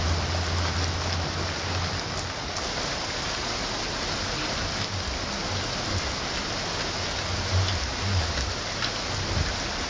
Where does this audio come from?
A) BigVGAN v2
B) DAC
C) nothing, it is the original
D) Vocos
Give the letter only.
C